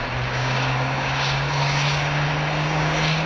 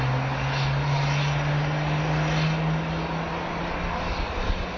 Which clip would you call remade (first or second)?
first